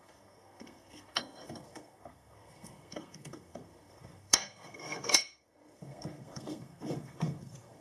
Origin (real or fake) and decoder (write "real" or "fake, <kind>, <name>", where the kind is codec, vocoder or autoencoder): fake, codec, SNAC